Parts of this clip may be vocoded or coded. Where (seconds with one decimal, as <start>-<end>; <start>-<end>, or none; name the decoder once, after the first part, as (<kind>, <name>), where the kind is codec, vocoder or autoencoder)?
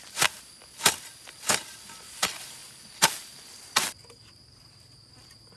none